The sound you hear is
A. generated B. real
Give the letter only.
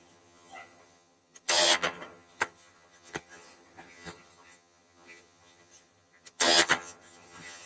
A